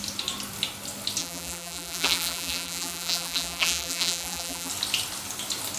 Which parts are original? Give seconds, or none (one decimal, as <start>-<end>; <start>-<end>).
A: 0.0-1.2; 4.7-5.8